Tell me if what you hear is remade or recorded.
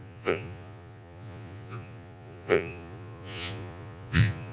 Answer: remade